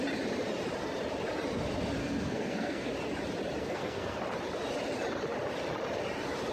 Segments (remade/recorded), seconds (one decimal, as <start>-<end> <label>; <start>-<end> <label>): 0.0-2.0 recorded; 2.0-2.9 remade; 2.9-3.6 recorded; 3.6-4.2 remade; 4.2-6.5 recorded